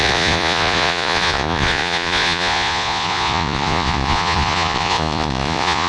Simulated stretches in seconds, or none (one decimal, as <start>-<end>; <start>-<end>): 0.0-5.9